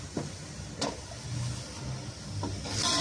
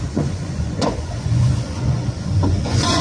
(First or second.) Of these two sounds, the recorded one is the first